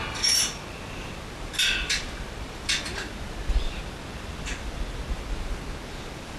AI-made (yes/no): no